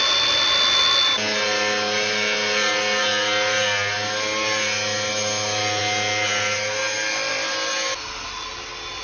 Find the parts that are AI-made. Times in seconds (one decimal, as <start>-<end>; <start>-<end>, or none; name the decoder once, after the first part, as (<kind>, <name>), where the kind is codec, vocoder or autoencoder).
none